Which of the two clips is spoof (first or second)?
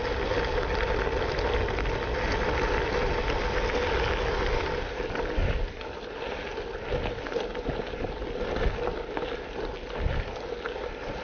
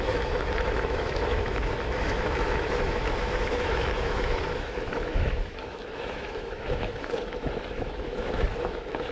second